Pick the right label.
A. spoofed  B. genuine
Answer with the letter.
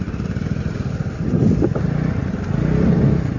B